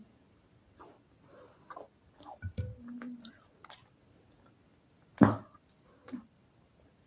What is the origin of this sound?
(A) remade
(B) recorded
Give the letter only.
B